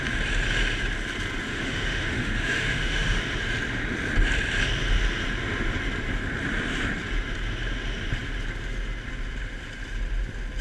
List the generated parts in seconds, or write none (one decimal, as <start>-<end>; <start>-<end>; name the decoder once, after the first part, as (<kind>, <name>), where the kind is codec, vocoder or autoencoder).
1.5-3.2 (autoencoder, DAC-VAE)